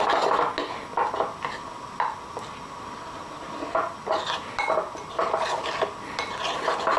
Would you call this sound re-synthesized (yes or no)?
no